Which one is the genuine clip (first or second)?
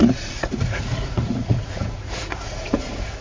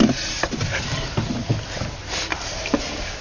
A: second